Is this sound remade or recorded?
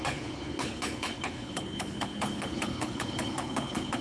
remade